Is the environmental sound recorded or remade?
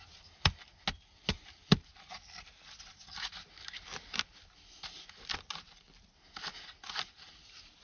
recorded